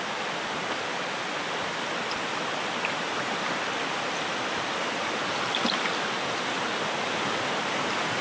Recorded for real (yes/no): yes